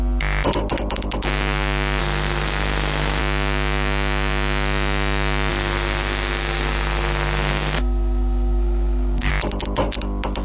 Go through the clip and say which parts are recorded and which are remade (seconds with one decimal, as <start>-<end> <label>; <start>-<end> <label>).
0.0-2.0 recorded; 2.0-3.2 remade; 3.2-5.5 recorded; 5.5-9.3 remade; 9.3-10.4 recorded